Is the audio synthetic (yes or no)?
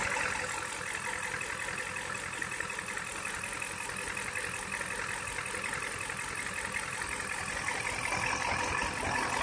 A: no